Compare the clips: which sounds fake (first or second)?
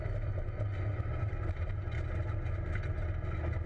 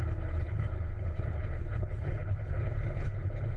second